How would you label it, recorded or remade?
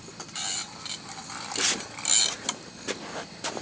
recorded